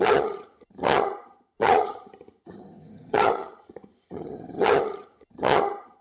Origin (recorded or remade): remade